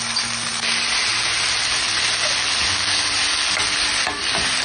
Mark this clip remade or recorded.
recorded